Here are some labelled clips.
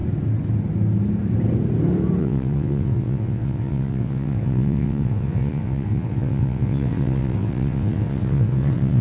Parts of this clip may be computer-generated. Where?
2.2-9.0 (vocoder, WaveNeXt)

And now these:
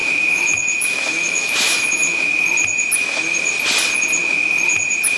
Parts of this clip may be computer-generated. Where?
0.0-2.3 (autoencoder, DAC-VAE)

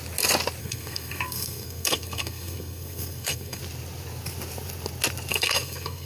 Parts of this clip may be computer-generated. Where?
0.6-3.6 (codec, SNAC); 5.3-6.1

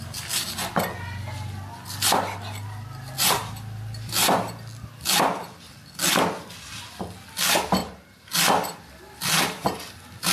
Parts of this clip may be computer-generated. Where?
7.8-8.3 (vocoder, BigVGAN v2)